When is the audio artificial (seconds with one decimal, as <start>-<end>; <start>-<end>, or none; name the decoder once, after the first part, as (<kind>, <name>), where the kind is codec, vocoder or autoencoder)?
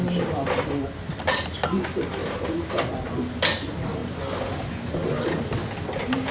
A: 2.2-2.9 (vocoder, BigVGAN v2); 4.0-4.7